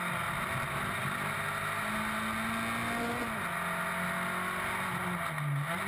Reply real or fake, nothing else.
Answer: real